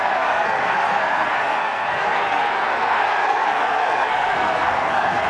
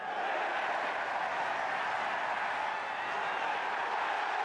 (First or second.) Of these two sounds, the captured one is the second